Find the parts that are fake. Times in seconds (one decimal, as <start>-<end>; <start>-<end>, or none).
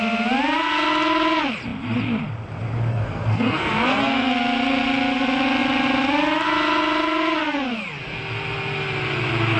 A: 2.9-4.3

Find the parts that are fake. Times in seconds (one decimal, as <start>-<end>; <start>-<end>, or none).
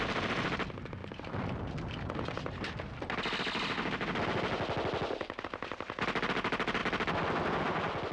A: none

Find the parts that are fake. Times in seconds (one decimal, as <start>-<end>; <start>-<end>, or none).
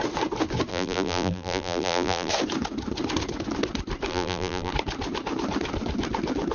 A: 0.7-2.3; 4.1-4.7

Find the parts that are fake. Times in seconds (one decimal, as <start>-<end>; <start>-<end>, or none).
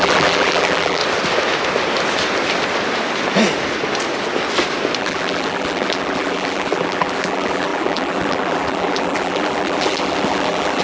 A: 0.0-1.0; 5.0-10.8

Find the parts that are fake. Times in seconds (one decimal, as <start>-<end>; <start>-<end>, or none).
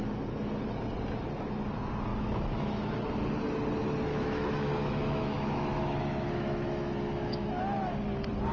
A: 2.1-2.9; 4.1-7.5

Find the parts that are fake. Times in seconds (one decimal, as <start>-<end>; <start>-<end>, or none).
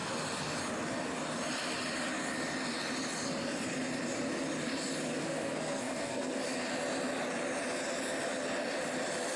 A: 5.2-6.4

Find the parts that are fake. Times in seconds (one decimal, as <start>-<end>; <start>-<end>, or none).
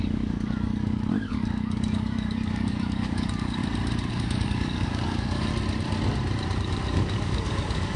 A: 0.0-3.6; 4.1-5.5; 6.6-8.0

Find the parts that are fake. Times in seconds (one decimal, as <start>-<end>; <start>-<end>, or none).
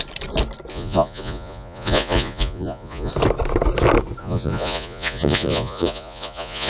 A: 0.7-3.1; 4.2-6.7